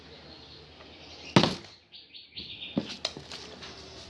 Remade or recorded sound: recorded